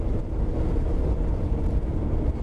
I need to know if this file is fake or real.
real